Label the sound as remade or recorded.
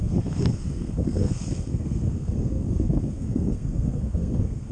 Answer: remade